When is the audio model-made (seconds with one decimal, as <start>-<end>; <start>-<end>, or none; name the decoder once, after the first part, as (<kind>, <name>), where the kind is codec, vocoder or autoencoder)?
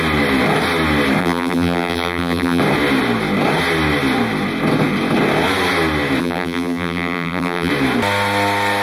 1.2-2.6 (vocoder, BigVGAN v2); 6.2-7.7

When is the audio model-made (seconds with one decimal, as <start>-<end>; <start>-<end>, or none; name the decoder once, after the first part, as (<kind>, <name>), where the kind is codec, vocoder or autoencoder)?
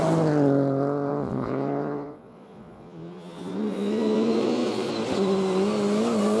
1.1-4.9 (vocoder, Vocos)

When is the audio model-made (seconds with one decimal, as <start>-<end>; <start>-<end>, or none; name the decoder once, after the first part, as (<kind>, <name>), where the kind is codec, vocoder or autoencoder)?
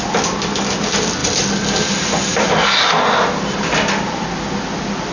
none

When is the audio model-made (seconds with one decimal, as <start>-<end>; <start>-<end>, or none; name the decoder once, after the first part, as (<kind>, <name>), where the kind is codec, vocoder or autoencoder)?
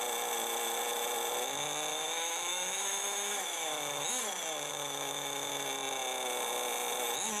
1.9-4.1 (autoencoder, DAC-VAE); 4.7-5.5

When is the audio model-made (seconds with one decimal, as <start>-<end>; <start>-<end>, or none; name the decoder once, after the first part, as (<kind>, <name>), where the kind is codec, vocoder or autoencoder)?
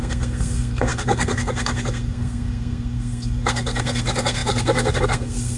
0.0-5.6 (codec, SNAC)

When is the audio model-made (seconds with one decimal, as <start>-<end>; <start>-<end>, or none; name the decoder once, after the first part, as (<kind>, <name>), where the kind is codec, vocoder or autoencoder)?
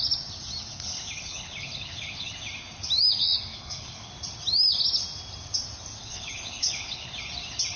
0.7-2.3 (codec, HILCodec); 3.5-4.1; 6.0-7.1